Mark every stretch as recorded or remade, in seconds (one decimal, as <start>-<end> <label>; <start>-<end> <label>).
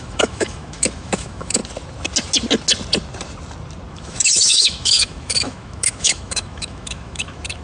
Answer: 0.0-1.6 remade; 1.6-3.9 recorded; 3.9-7.6 remade